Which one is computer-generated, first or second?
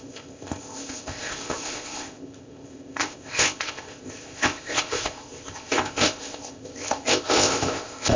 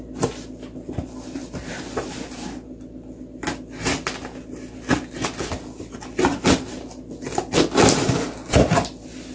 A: first